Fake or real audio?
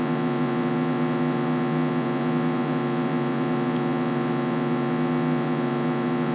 fake